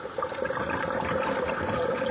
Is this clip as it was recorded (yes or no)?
yes